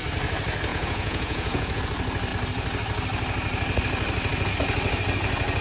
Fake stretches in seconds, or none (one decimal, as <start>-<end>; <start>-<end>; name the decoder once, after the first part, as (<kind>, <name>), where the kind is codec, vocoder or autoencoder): 0.7-1.8 (vocoder, Vocos)